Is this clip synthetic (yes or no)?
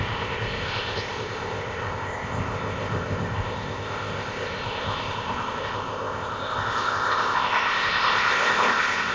yes